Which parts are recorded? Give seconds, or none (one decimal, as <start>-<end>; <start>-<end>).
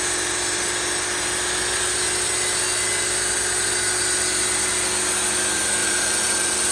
0.0-5.8